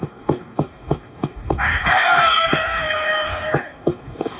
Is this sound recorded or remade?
remade